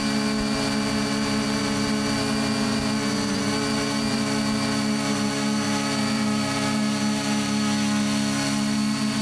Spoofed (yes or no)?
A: no